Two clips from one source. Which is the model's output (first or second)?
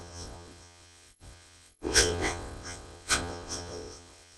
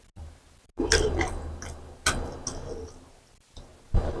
first